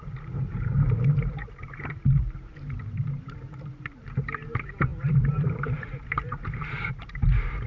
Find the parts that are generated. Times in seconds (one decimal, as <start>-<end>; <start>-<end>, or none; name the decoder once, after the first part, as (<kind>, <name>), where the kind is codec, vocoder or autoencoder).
0.0-7.7 (vocoder, BigVGAN v2)